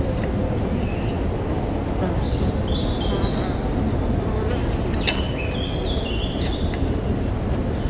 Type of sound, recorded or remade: recorded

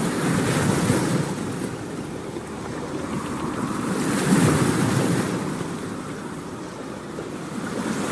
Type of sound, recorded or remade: recorded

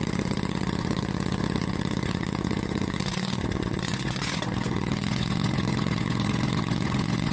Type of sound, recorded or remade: remade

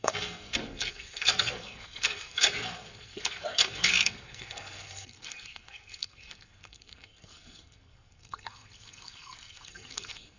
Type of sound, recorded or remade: remade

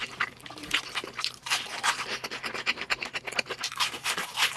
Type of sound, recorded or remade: recorded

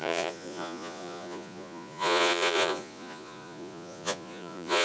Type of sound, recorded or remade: remade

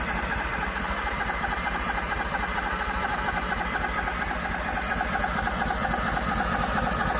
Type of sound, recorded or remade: recorded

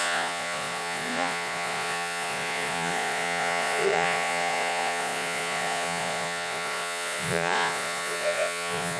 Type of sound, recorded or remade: remade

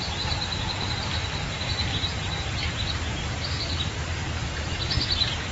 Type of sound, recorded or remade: recorded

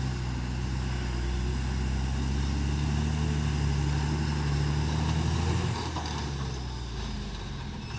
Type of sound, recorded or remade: recorded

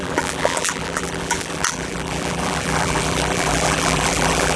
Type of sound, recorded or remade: remade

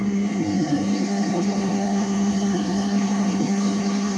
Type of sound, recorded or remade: remade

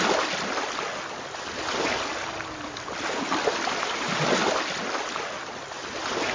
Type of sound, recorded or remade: recorded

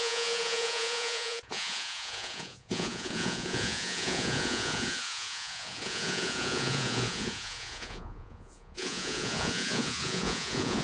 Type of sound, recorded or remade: remade